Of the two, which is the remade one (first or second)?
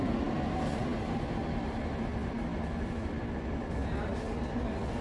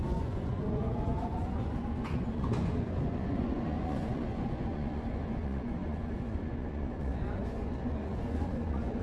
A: second